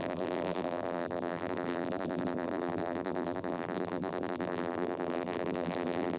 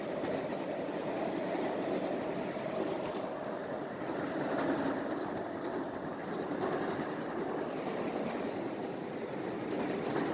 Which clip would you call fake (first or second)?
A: first